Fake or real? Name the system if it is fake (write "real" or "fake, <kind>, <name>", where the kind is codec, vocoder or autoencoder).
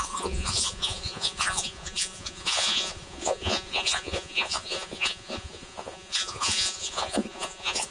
fake, vocoder, Vocos